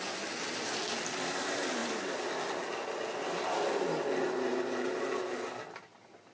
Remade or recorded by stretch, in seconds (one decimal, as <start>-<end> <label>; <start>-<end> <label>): 0.0-6.3 recorded